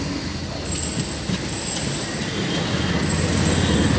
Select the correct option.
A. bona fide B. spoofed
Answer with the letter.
A